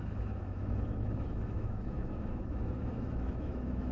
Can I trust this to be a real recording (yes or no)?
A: no